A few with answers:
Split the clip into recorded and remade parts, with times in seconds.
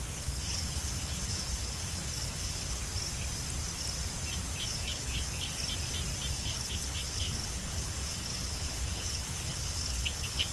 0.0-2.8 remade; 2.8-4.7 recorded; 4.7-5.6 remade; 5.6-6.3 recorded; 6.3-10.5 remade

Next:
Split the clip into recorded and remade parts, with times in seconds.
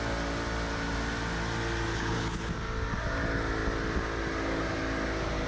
0.0-1.9 recorded; 1.9-2.5 remade; 2.5-5.5 recorded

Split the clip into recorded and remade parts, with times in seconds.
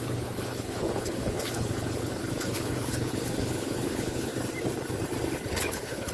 0.0-4.3 remade; 4.3-5.5 recorded; 5.5-6.1 remade